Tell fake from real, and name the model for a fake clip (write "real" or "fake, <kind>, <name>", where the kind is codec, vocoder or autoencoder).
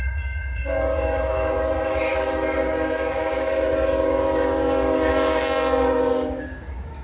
fake, codec, DAC